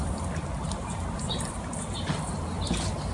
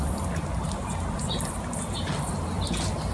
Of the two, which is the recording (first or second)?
second